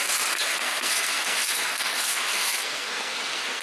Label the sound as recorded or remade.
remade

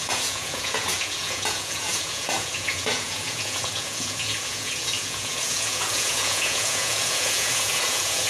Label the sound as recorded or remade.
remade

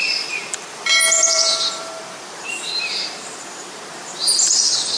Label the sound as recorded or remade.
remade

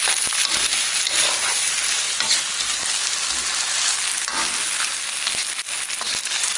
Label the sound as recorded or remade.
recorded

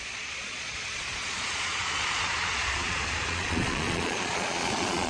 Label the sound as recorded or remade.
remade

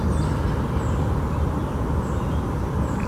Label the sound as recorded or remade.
recorded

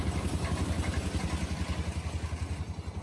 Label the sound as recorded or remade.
recorded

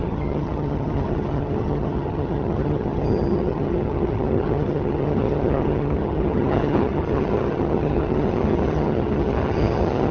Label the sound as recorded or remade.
remade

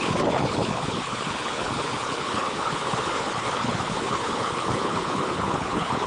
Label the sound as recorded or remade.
remade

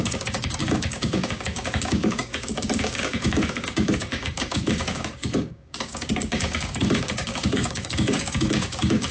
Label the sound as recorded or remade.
remade